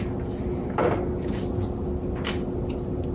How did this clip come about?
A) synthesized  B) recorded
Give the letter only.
B